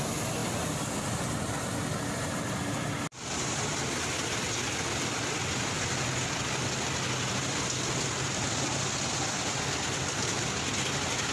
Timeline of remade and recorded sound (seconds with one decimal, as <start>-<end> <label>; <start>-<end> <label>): 0.0-11.3 recorded